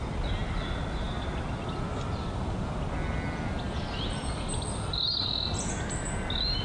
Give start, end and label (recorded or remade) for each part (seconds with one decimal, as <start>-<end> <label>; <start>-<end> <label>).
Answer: 0.0-6.6 recorded